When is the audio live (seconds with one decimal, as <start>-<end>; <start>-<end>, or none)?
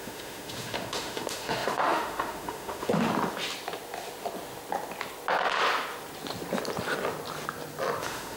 3.1-8.0